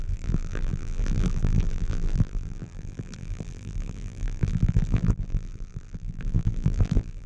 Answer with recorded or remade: remade